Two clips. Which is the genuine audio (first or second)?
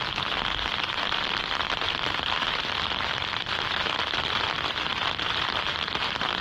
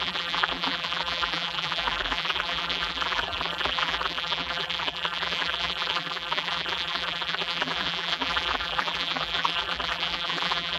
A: first